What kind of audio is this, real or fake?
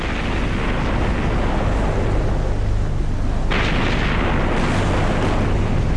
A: real